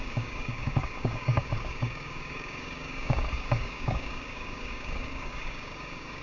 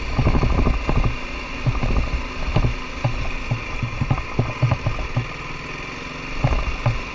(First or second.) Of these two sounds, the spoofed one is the first